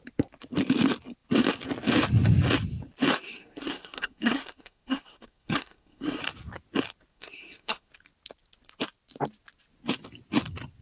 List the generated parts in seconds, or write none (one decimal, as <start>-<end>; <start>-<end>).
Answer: 3.4-6.2; 7.1-7.9